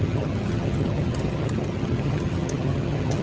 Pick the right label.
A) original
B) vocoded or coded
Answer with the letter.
B